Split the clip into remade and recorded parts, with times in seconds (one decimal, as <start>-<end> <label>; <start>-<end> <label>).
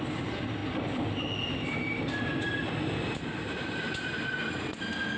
0.0-5.2 recorded